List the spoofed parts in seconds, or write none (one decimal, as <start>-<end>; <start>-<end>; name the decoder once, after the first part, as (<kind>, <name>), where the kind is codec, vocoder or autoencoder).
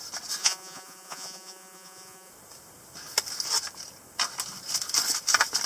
0.4-2.3 (vocoder, Vocos)